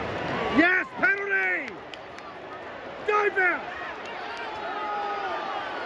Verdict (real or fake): real